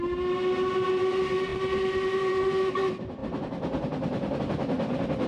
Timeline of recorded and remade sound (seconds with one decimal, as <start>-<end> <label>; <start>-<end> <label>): 0.0-5.3 recorded